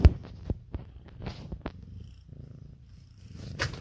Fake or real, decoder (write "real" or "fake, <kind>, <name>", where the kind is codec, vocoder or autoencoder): fake, vocoder, BigVGAN v2